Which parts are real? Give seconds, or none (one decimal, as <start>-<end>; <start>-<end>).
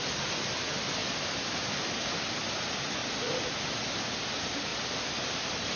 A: 0.0-5.8